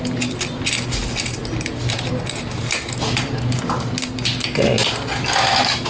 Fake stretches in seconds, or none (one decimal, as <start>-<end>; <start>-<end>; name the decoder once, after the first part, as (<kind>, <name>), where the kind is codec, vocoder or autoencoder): none